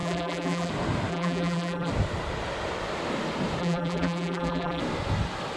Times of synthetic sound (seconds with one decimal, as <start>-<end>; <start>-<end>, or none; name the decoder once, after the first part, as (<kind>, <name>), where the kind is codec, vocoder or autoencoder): 0.0-0.7 (vocoder, BigVGAN v2); 1.1-1.9; 3.6-4.8